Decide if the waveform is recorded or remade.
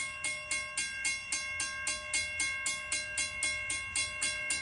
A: recorded